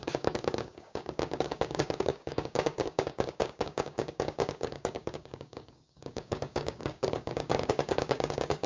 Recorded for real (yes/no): no